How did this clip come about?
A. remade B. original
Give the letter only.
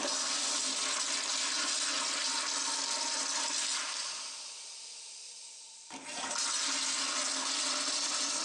B